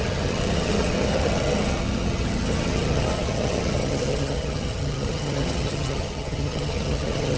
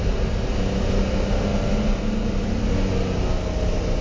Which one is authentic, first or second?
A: second